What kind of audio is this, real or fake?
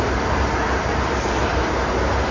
real